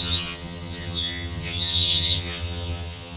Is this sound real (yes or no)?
no